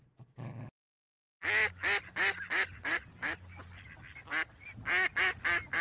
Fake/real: real